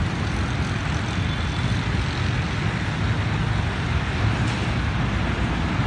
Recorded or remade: recorded